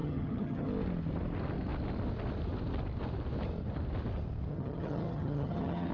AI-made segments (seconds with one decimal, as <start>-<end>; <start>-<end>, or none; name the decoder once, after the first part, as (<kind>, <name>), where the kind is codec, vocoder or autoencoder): 0.0-0.7 (vocoder, HiFi-GAN); 4.5-5.9